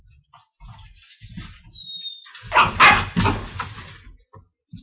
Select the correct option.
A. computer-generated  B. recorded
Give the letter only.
B